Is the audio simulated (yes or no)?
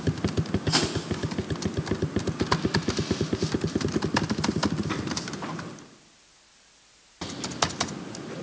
no